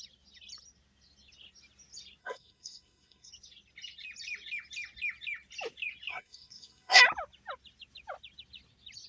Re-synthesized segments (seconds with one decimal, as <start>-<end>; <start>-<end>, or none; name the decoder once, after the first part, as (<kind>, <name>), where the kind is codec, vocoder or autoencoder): 2.2-3.3 (codec, SNAC); 6.1-7.0